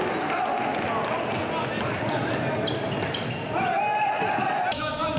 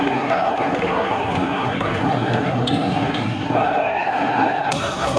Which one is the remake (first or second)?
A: second